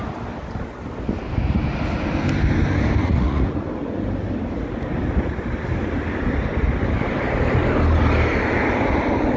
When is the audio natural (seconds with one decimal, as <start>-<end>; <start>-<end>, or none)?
0.0-3.0; 3.6-9.4